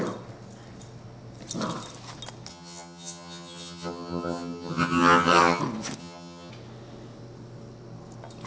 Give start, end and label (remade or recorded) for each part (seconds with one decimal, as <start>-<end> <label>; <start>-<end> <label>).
0.0-2.5 recorded; 2.5-5.6 remade; 5.6-6.0 recorded; 6.0-6.5 remade; 6.5-8.5 recorded